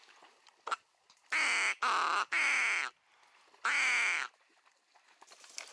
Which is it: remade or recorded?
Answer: recorded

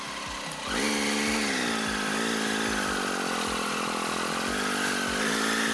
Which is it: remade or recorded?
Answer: recorded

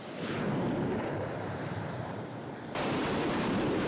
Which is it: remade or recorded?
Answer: remade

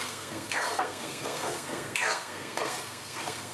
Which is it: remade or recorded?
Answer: remade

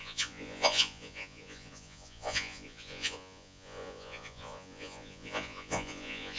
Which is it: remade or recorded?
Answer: remade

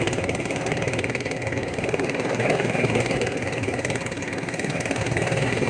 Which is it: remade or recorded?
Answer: remade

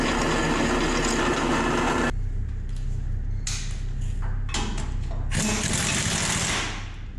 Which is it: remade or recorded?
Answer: recorded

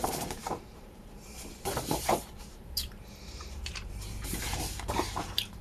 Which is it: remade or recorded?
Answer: remade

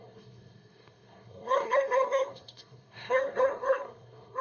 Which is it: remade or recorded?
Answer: remade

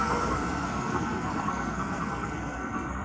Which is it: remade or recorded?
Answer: remade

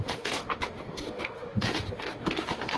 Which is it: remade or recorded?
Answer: remade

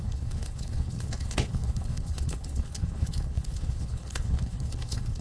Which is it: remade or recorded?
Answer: remade